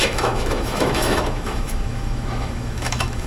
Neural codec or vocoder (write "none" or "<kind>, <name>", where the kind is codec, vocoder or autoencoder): autoencoder, DAC-VAE